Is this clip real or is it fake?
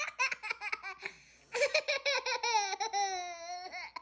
real